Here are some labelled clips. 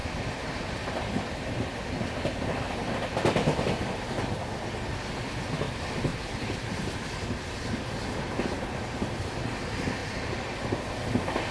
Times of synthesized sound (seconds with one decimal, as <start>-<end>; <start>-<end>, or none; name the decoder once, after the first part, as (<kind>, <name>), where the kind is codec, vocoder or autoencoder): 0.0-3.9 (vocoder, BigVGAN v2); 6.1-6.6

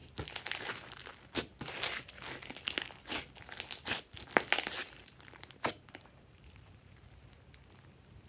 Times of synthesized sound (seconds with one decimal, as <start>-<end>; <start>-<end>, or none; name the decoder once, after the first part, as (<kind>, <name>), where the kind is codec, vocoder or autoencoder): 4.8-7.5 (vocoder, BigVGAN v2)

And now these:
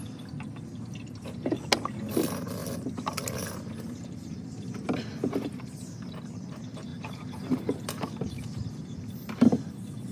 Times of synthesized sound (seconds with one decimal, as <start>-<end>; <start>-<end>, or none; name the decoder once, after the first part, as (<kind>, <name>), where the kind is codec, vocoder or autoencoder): 2.6-6.5 (vocoder, BigVGAN v2); 6.9-9.7

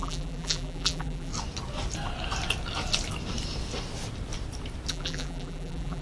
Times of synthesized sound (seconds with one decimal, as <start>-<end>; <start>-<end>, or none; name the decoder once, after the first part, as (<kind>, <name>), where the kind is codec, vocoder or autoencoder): 0.0-1.3 (vocoder, BigVGAN v2); 4.9-6.0